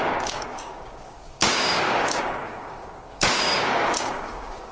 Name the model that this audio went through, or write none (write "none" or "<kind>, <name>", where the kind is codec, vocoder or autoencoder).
codec, DAC